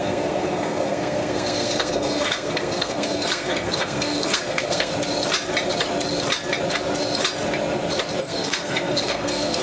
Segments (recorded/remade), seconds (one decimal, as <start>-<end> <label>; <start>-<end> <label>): 0.0-4.9 remade; 4.9-8.2 recorded; 8.2-9.6 remade